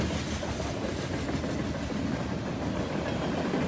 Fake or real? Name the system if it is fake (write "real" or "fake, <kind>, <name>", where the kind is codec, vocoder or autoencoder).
real